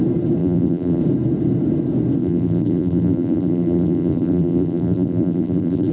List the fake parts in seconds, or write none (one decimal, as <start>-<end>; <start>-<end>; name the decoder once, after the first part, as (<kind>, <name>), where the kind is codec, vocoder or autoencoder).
0.4-1.0 (vocoder, BigVGAN v2); 2.2-5.9